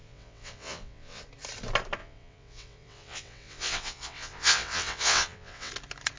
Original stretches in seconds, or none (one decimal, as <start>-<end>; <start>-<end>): 1.2-2.0; 5.7-6.2